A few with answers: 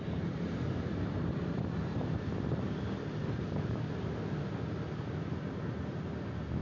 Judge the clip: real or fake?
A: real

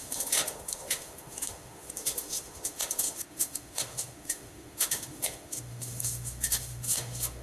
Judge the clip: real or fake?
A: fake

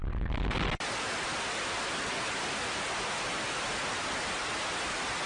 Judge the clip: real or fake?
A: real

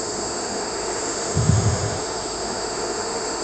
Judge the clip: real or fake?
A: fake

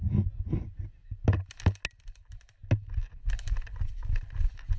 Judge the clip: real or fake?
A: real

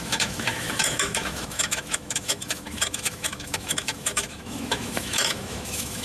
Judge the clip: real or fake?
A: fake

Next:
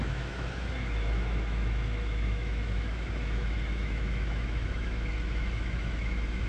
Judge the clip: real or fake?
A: fake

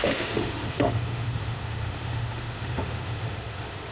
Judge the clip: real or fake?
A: fake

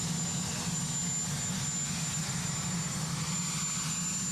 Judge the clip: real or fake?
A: real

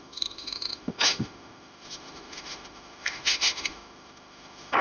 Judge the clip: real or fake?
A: fake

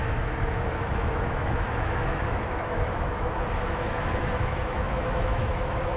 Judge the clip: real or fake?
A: fake